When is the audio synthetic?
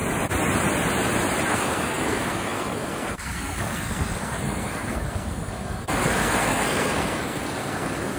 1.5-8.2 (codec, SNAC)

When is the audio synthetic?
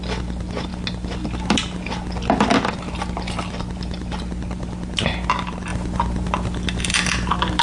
none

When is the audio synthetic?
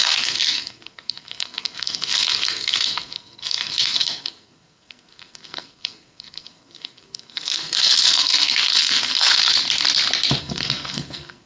0.0-9.5 (codec, SNAC); 10.4-11.5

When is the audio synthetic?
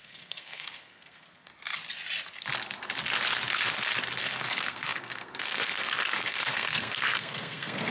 0.0-1.5 (codec, SNAC); 4.2-7.9